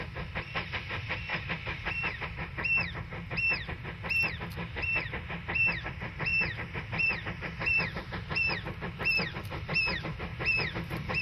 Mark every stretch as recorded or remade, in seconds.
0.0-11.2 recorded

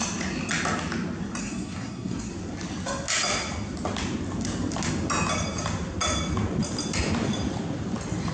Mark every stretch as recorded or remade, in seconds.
0.0-1.4 recorded; 1.4-2.3 remade; 2.3-8.3 recorded

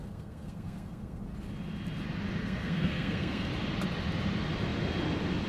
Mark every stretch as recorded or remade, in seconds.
0.0-1.2 remade; 1.2-2.4 recorded; 2.4-3.5 remade; 3.5-5.5 recorded